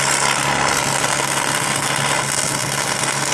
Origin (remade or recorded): recorded